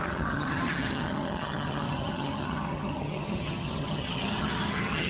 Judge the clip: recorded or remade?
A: remade